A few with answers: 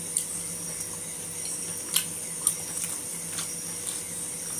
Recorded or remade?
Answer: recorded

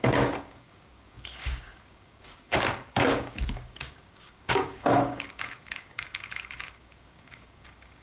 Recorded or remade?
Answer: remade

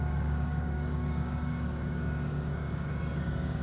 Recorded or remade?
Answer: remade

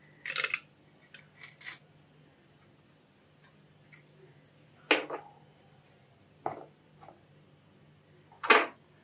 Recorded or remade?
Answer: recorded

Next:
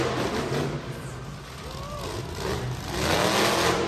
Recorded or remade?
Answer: recorded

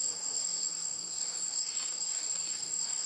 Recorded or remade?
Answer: remade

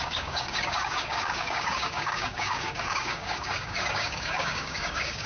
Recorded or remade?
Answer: remade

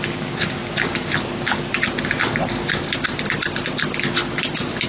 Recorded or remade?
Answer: recorded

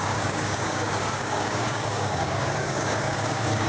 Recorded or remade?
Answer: remade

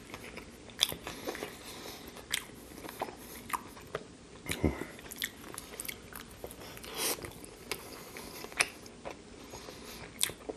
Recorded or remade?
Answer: recorded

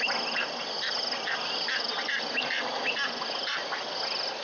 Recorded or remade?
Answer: recorded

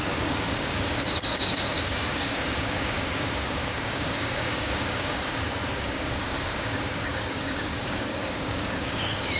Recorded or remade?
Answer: remade